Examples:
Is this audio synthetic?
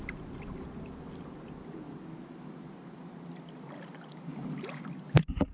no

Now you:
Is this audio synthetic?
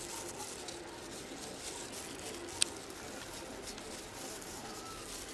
no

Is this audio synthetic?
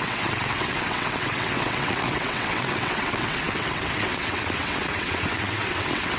yes